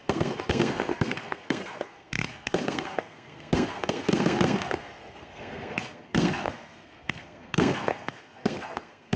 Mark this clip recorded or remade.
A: remade